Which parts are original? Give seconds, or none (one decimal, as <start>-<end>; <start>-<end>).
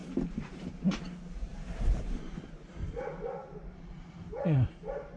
0.7-1.5; 2.2-3.4